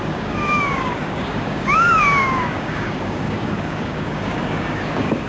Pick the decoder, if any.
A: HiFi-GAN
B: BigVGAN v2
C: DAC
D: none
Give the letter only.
C